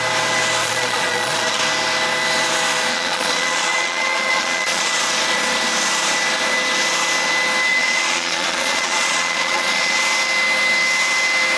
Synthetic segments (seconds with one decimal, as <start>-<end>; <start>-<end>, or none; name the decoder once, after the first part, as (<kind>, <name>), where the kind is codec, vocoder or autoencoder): 0.6-1.6 (vocoder, Vocos); 2.9-5.0; 7.7-10.0